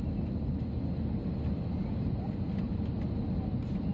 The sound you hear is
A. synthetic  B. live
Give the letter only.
B